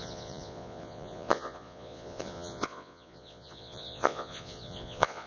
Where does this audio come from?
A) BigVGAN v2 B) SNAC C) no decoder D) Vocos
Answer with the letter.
D